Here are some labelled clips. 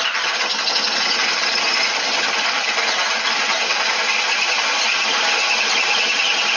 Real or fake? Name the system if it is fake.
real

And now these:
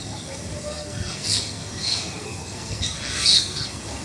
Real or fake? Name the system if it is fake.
fake, codec, SNAC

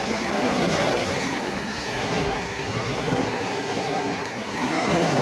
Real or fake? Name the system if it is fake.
fake, codec, SNAC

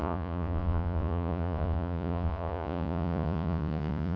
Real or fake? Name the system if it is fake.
fake, vocoder, Vocos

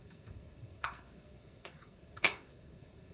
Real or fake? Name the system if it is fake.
fake, codec, SNAC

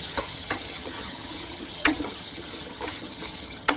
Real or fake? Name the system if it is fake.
fake, vocoder, HiFi-GAN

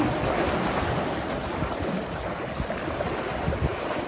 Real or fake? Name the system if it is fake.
real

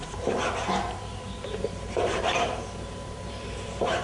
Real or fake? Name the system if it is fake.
fake, vocoder, BigVGAN v2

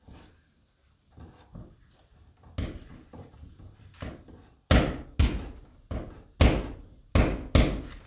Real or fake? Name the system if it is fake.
real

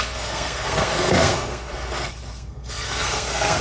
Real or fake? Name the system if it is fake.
fake, codec, SNAC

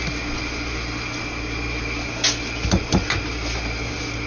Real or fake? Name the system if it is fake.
real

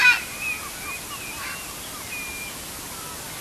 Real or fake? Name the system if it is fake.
real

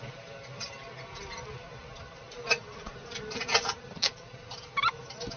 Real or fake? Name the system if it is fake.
real